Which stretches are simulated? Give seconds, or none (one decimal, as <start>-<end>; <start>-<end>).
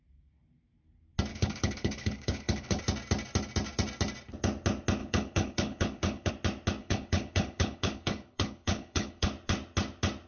1.3-2.8; 5.0-6.3; 6.8-9.3